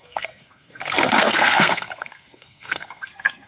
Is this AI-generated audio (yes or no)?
yes